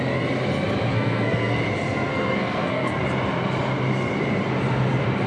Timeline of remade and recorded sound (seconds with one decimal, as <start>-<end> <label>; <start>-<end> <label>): 0.0-0.9 recorded; 0.9-1.6 remade; 1.6-2.1 recorded; 2.1-3.0 remade; 3.0-5.3 recorded